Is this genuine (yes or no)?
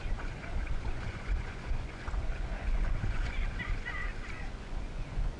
no